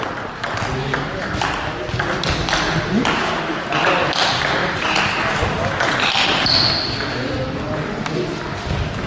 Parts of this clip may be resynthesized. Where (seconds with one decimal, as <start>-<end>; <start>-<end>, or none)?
none